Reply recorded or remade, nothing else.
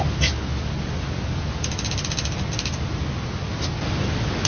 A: recorded